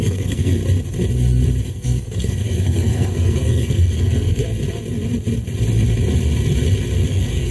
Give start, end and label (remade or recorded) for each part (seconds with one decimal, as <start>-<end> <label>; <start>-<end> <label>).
0.0-0.6 remade; 0.6-1.6 recorded; 1.6-4.4 remade; 4.4-7.1 recorded; 7.1-7.5 remade